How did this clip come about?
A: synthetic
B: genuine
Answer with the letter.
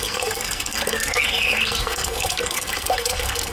A